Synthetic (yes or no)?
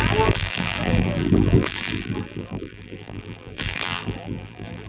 yes